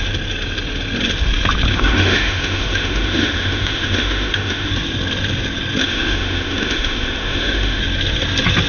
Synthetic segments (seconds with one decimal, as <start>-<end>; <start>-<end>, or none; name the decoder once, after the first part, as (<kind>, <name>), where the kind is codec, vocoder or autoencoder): 1.7-4.7 (autoencoder, DAC-VAE); 5.8-7.8